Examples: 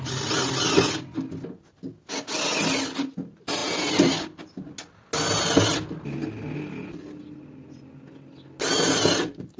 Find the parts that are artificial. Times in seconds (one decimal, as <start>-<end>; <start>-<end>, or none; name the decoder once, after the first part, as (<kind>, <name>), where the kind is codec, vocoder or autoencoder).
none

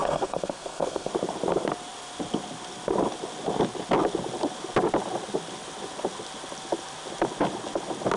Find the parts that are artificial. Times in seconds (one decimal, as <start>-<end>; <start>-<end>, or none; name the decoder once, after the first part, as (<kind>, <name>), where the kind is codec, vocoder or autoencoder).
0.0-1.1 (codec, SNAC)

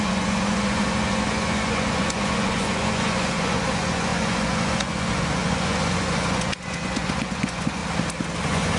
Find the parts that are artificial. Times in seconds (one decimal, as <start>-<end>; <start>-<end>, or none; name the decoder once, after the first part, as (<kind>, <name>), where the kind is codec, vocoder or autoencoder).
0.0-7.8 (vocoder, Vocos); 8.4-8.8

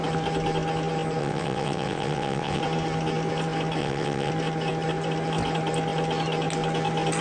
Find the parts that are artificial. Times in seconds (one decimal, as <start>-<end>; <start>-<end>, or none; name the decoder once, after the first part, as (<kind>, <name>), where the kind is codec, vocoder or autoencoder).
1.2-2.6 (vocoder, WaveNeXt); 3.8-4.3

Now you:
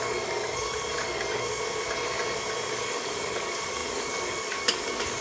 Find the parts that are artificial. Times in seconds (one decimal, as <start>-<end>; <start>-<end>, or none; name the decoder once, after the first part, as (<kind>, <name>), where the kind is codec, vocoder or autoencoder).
0.0-1.5 (codec, DAC); 2.7-5.2